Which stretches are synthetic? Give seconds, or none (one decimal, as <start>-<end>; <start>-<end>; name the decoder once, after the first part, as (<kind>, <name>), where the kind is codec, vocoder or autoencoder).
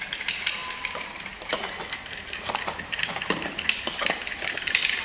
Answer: none